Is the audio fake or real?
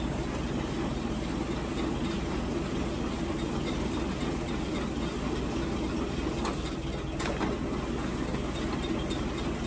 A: real